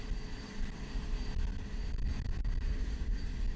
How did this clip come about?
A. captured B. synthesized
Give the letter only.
A